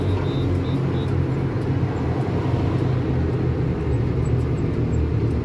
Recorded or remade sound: recorded